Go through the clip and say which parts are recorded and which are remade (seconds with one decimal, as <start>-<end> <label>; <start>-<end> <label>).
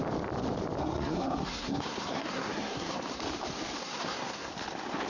0.0-0.8 recorded; 0.8-3.2 remade; 3.2-3.8 recorded; 3.8-4.5 remade; 4.5-5.1 recorded